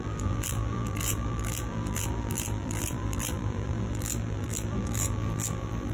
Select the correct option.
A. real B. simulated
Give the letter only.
B